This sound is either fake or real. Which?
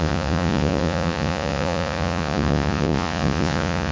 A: fake